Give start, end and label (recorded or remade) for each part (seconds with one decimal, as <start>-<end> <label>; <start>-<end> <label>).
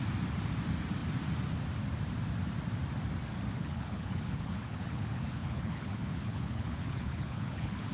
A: 0.0-3.6 recorded; 3.6-7.9 remade